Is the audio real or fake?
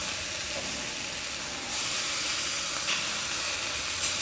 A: real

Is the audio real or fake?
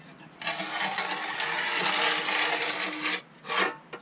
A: real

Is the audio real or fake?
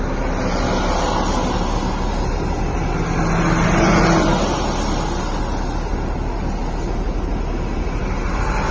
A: real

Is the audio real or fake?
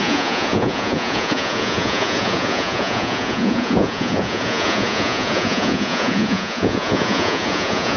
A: fake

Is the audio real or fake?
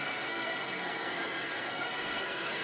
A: fake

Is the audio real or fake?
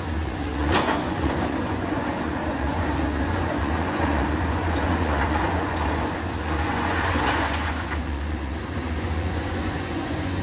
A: fake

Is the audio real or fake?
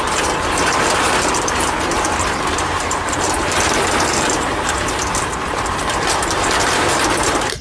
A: fake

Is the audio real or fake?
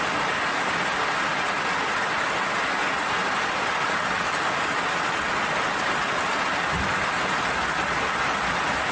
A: real